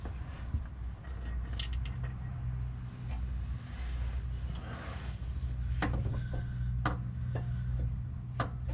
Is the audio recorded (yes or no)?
yes